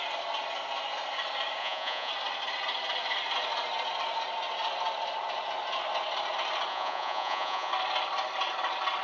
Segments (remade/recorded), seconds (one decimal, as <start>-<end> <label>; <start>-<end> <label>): 0.0-1.6 recorded; 1.6-2.1 remade; 2.1-6.7 recorded; 6.7-7.7 remade; 7.7-9.0 recorded